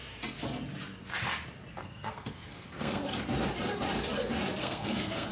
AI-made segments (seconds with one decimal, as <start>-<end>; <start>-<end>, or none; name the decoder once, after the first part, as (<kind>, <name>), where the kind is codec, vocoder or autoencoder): 1.7-3.0 (codec, SNAC); 4.6-5.3